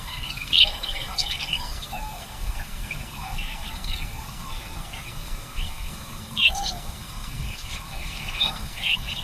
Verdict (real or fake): fake